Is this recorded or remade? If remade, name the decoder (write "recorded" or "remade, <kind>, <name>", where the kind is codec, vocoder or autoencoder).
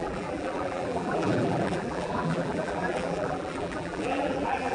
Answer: remade, vocoder, BigVGAN v2